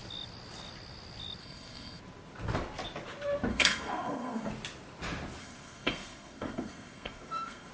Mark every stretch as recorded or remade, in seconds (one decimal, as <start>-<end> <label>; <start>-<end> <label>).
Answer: 0.0-1.4 recorded; 1.4-2.0 remade; 2.0-3.5 recorded; 3.5-4.5 remade; 4.5-5.4 recorded; 5.4-7.7 remade